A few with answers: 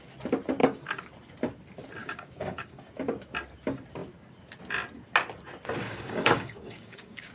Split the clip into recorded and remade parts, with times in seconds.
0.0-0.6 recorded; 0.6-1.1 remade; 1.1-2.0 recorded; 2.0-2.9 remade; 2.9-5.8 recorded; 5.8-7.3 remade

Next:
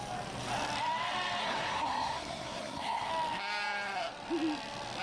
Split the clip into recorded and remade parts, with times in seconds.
0.0-1.4 recorded; 1.4-3.1 remade; 3.1-5.0 recorded

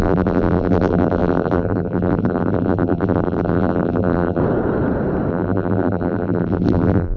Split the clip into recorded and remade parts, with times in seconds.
0.0-4.4 remade; 4.4-5.3 recorded; 5.3-7.2 remade

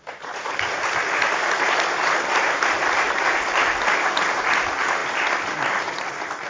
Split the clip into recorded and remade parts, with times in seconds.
0.0-6.5 recorded

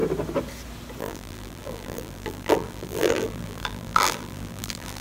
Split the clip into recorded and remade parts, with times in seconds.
0.0-1.0 recorded; 1.0-5.0 remade

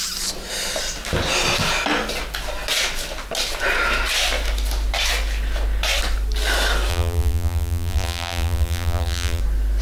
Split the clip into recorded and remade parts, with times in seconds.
0.0-6.9 recorded; 6.9-9.4 remade; 9.4-9.8 recorded